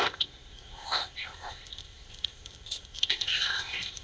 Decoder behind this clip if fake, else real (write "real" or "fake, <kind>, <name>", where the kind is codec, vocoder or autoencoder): fake, codec, ZipCodec